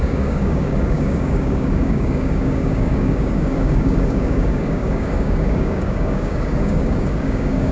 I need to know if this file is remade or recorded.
remade